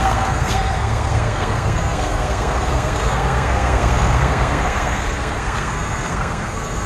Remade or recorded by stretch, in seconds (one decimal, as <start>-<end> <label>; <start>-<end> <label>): 0.0-6.9 remade